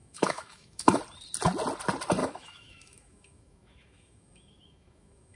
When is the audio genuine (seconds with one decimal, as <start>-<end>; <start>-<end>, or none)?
1.0-2.2